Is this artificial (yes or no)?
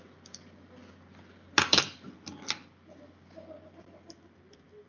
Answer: no